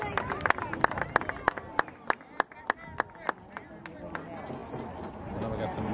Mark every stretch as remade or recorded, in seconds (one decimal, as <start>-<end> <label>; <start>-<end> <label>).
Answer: 0.0-5.9 recorded